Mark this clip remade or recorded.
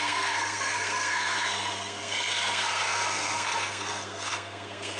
remade